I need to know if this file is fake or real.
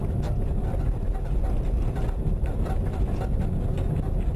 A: real